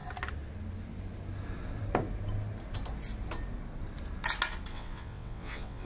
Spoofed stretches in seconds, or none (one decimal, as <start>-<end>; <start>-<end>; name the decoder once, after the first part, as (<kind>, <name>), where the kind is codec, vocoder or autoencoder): 4.7-5.9 (vocoder, WaveNeXt)